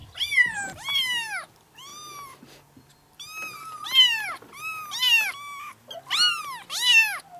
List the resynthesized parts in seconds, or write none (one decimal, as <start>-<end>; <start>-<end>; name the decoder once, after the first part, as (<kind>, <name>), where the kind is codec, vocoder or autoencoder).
none